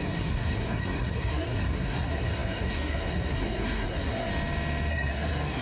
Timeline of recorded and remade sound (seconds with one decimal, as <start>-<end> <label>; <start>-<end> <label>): 0.0-4.3 remade; 4.3-4.9 recorded; 4.9-5.6 remade